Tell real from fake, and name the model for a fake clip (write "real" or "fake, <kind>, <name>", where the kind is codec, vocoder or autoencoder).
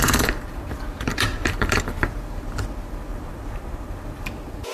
fake, vocoder, BigVGAN v2